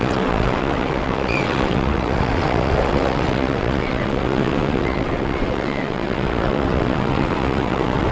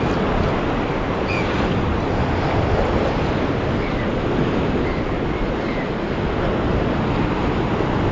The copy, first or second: first